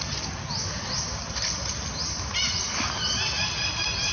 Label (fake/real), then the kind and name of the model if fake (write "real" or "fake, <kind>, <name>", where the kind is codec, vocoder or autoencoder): real